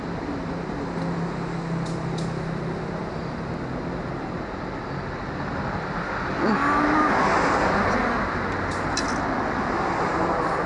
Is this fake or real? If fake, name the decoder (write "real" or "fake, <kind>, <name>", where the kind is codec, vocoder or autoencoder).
real